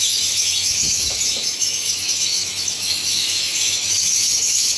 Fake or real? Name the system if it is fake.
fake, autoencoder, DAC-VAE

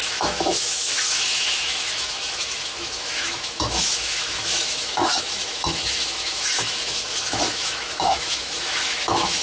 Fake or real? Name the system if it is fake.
fake, autoencoder, DAC-VAE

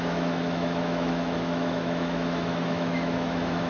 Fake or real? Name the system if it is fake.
fake, autoencoder, DAC-VAE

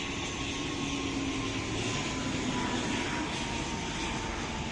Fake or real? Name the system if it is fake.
real